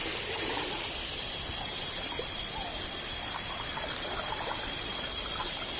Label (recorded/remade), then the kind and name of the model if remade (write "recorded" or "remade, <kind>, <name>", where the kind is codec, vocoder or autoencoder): recorded